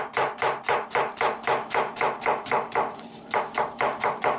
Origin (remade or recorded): remade